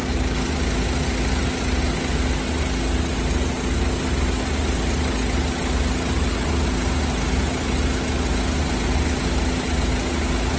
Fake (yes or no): no